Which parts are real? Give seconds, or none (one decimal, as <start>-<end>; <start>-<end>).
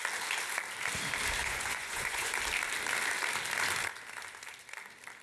0.0-1.4; 2.3-5.2